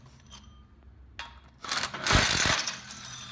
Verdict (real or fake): real